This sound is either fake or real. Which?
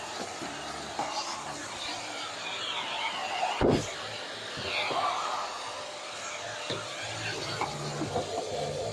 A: real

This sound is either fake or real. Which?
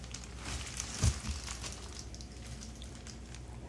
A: real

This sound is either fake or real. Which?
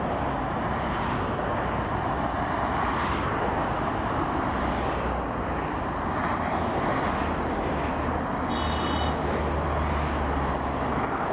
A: real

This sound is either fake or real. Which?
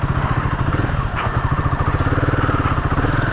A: real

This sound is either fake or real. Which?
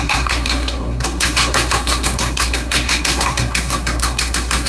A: fake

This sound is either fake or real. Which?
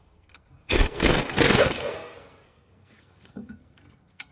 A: fake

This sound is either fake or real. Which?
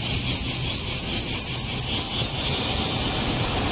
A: real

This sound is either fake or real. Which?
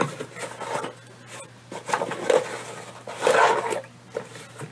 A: real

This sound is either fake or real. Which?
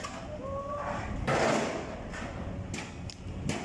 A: real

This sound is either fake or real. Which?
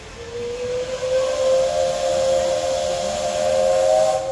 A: real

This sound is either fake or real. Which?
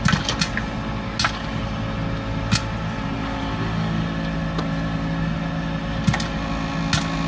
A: real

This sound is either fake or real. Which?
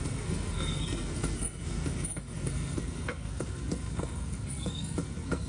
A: fake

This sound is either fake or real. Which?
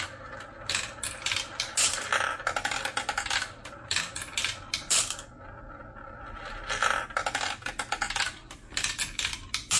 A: real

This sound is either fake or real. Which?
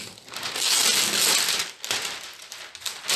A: real